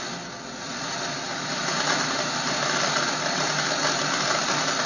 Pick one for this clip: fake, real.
real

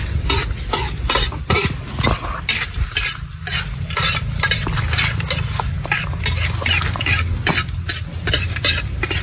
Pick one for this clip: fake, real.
real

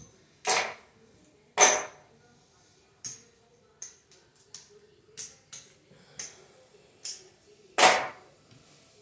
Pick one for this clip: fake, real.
real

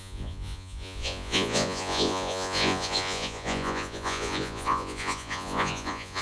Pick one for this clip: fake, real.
fake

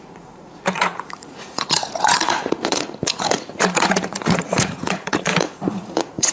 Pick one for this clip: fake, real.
fake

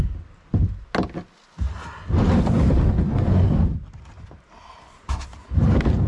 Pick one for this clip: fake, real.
real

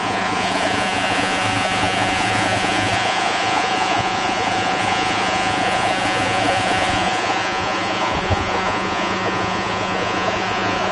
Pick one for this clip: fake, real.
fake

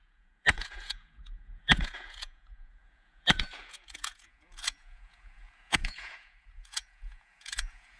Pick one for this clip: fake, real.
fake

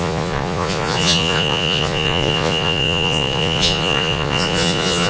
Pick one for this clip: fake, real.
fake